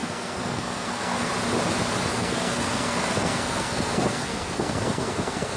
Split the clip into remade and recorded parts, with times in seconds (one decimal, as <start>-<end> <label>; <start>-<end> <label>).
0.0-1.3 remade; 1.3-2.1 recorded; 2.1-5.6 remade